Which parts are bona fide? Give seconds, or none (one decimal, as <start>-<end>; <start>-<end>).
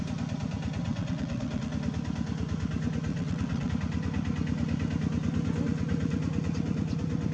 0.0-0.8; 1.7-3.1; 3.7-7.3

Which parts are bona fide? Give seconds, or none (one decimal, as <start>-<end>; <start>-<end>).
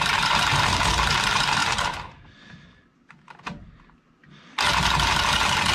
0.0-5.7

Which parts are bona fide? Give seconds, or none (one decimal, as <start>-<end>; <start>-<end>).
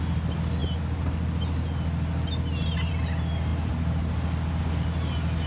0.0-5.5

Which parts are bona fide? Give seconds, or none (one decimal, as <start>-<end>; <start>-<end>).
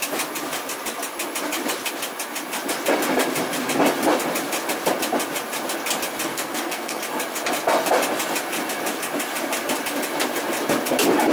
0.0-6.3; 7.0-11.3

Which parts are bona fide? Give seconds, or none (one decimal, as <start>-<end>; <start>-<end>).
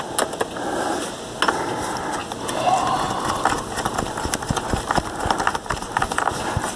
0.0-6.8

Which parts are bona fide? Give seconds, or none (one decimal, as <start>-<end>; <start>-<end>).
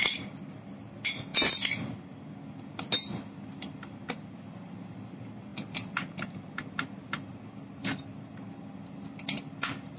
0.0-10.0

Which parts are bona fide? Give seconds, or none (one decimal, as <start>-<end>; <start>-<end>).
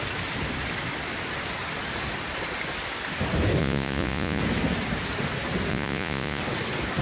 0.0-3.6; 4.4-5.7; 6.4-7.0